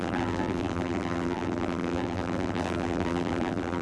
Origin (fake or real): fake